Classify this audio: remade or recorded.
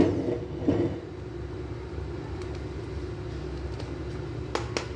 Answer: recorded